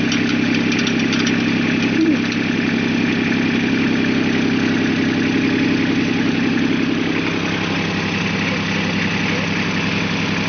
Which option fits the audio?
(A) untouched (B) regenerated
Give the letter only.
A